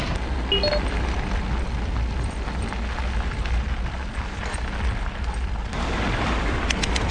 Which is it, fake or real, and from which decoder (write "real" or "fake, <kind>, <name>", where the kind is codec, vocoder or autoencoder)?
real